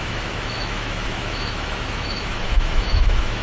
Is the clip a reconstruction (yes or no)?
yes